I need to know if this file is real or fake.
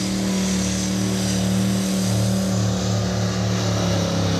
real